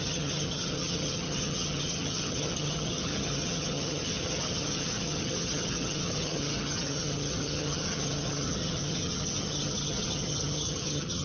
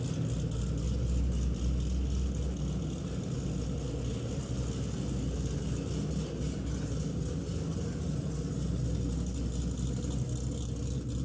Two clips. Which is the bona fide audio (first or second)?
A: second